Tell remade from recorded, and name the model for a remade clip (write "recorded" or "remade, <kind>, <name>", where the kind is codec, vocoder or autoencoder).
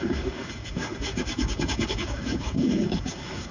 remade, codec, DAC